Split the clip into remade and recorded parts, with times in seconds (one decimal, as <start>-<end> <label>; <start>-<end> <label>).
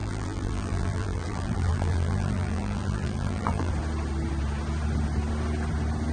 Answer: 0.0-3.7 remade; 3.7-6.1 recorded